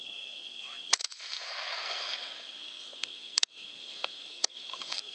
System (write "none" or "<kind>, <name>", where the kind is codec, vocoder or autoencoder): codec, SNAC